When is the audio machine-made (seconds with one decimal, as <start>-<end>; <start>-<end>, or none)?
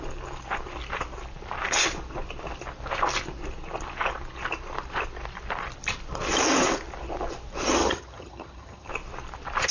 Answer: 7.8-8.9